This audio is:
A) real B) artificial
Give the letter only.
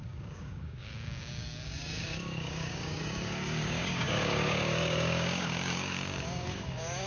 B